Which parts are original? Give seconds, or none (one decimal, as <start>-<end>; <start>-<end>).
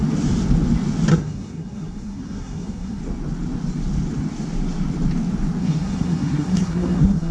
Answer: 0.0-1.1; 3.0-5.6